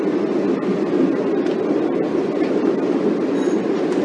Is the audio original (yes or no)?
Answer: yes